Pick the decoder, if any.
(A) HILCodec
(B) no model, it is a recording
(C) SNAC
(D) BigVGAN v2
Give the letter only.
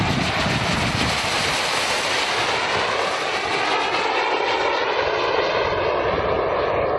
B